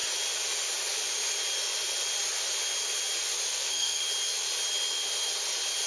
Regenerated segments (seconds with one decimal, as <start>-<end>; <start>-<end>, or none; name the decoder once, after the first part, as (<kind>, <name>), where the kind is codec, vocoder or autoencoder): 3.5-4.0 (codec, SNAC)